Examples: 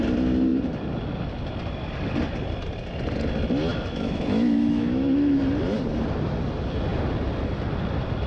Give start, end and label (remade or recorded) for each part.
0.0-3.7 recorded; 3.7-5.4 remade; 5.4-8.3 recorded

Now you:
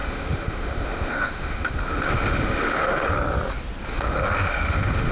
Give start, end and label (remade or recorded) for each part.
0.0-3.1 remade; 3.1-3.9 recorded; 3.9-5.1 remade

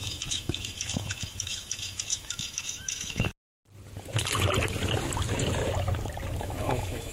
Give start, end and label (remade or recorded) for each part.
0.0-3.3 remade; 3.3-6.4 recorded; 6.4-7.1 remade

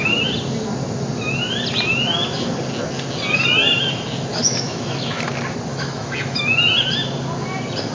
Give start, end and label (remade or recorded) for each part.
0.0-4.3 recorded; 4.3-5.3 remade; 5.3-5.7 recorded; 5.7-6.4 remade; 6.4-7.9 recorded

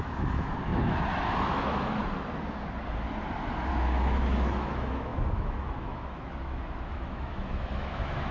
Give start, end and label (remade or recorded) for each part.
0.0-2.0 remade; 2.0-3.7 recorded; 3.7-8.3 remade

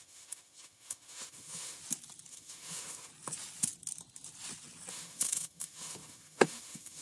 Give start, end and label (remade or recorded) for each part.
0.0-1.8 remade; 1.8-2.3 recorded; 2.3-3.1 remade; 3.1-4.9 recorded; 4.9-7.0 remade

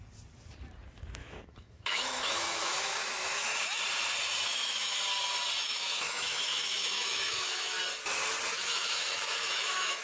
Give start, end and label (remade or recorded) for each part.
0.0-1.2 recorded; 1.2-3.8 remade; 3.8-4.5 recorded; 4.5-5.0 remade; 5.0-5.6 recorded; 5.6-7.8 remade; 7.8-8.5 recorded; 8.5-10.0 remade